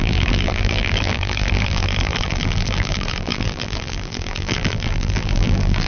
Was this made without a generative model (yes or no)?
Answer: no